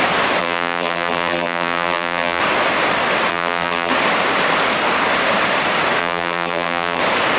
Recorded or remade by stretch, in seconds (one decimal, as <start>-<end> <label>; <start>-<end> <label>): 0.0-0.4 recorded; 0.4-2.4 remade; 2.4-3.3 recorded; 3.3-3.9 remade; 3.9-6.0 recorded; 6.0-7.0 remade; 7.0-7.4 recorded